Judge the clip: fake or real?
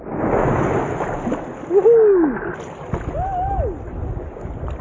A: real